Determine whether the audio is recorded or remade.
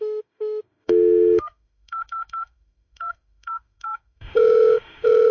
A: remade